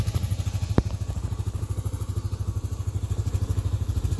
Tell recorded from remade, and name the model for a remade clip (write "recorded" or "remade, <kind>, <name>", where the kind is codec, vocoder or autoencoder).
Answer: recorded